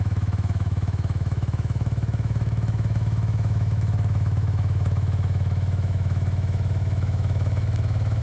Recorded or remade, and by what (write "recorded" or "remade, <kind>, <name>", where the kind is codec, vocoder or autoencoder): remade, autoencoder, DAC-VAE